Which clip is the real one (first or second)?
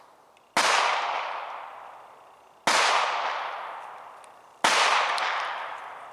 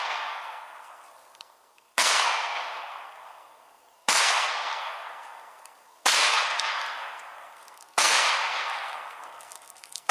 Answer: first